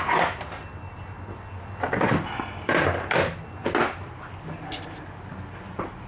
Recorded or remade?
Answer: recorded